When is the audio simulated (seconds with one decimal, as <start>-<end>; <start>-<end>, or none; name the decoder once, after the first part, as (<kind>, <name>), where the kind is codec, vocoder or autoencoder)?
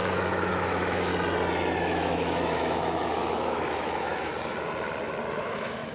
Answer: 0.0-1.1 (autoencoder, DAC-VAE); 1.8-4.3; 5.4-5.9